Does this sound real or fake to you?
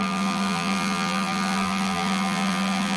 fake